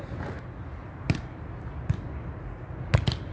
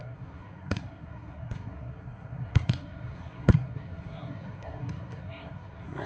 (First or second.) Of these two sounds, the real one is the first